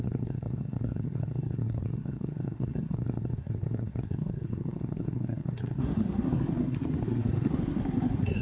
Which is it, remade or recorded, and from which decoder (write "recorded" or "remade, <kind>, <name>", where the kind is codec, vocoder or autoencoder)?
remade, codec, SNAC